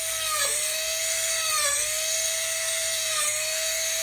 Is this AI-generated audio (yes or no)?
yes